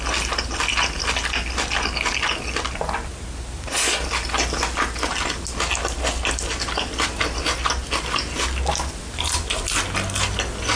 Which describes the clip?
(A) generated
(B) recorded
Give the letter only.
B